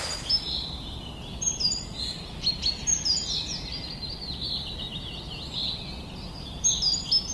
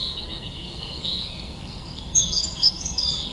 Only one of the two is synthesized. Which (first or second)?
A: second